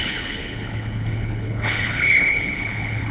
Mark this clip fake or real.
fake